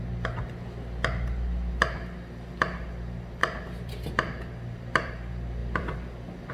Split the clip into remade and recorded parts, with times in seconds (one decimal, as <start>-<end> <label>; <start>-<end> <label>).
0.0-3.4 recorded; 3.4-5.1 remade; 5.1-5.6 recorded; 5.6-6.5 remade